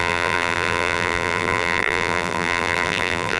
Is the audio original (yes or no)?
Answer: no